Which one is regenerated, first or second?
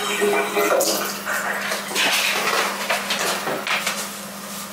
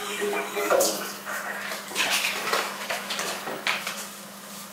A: second